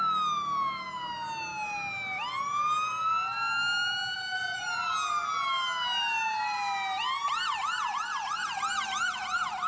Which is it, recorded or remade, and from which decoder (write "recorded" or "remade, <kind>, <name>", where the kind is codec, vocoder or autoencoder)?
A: recorded